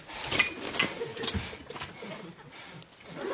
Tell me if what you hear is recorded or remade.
recorded